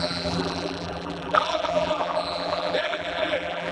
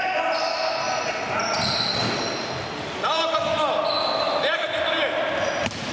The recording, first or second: second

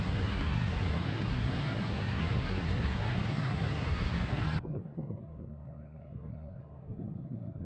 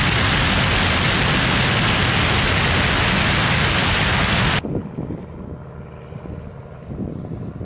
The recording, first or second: second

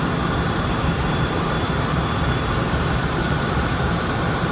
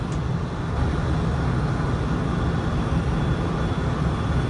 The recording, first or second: second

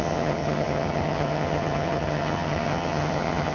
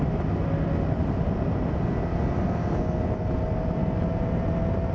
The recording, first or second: second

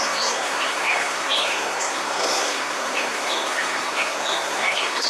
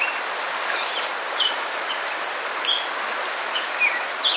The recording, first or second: second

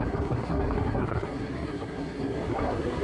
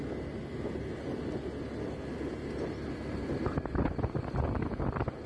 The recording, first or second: second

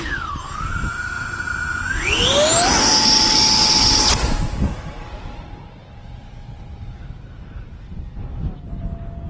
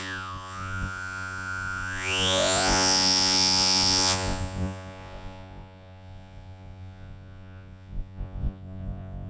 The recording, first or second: first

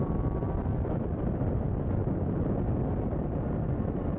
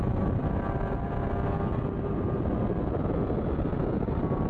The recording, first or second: second